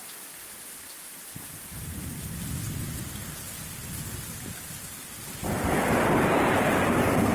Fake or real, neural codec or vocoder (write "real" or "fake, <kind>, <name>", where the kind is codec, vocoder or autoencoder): fake, vocoder, BigVGAN v2